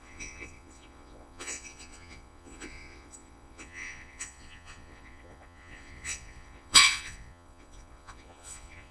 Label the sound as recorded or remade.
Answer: remade